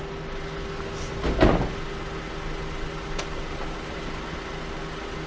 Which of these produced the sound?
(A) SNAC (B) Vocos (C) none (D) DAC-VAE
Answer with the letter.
C